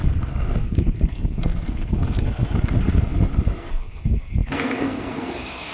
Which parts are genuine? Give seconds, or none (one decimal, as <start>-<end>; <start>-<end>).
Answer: none